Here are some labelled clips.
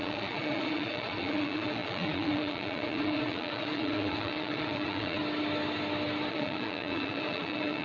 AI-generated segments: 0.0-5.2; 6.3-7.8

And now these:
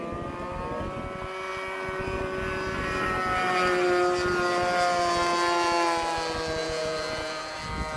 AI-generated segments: 6.6-7.6